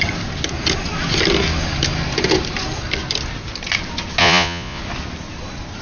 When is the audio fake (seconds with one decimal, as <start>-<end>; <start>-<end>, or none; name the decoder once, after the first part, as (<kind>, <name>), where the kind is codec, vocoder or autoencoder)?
4.2-4.8 (vocoder, Vocos)